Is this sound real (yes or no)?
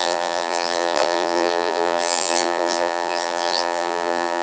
no